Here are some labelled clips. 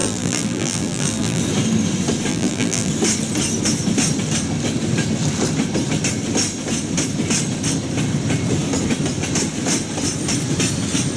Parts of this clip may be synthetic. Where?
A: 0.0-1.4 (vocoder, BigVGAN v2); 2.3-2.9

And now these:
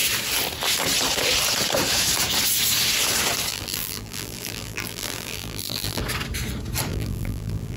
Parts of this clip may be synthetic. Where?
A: 3.5-6.0 (vocoder, BigVGAN v2); 6.9-7.8

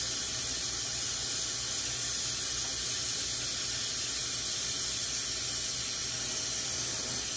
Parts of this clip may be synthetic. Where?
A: none

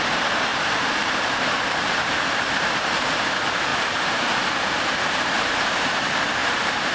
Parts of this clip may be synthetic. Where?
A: 0.5-3.2 (vocoder, BigVGAN v2); 3.7-5.7; 6.4-6.9

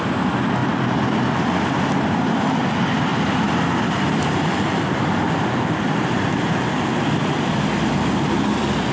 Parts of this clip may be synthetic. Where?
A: 0.6-1.6 (vocoder, BigVGAN v2); 3.1-6.4